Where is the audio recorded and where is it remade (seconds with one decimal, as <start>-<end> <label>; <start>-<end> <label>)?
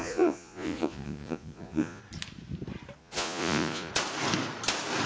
0.0-2.0 remade; 2.0-3.0 recorded; 3.0-3.9 remade; 3.9-5.1 recorded